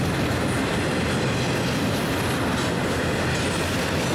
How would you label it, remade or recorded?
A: recorded